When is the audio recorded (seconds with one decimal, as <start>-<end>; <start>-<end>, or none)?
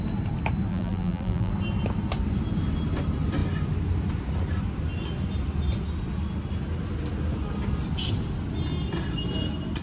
0.0-0.7; 1.5-9.8